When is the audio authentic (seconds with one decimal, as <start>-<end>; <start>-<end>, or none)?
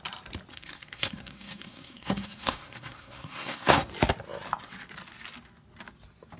0.0-0.5; 3.9-6.4